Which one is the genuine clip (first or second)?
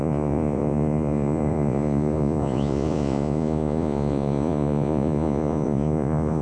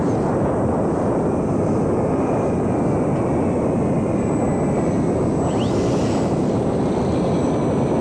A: second